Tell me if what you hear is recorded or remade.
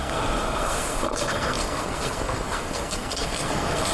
remade